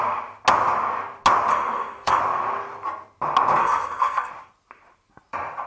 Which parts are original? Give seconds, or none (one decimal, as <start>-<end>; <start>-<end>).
0.0-1.5; 2.2-3.6; 4.3-5.7